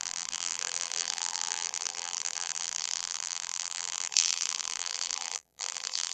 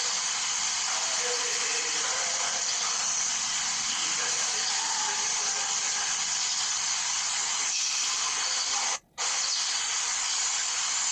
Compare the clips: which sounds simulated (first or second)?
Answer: first